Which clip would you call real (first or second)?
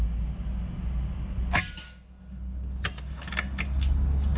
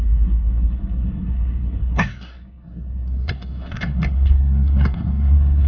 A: first